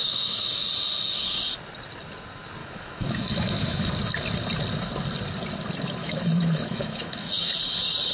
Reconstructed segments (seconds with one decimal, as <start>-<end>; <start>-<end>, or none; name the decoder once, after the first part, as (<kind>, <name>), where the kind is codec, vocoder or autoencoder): 0.0-0.7 (autoencoder, DAC-VAE); 2.6-3.9; 6.0-7.6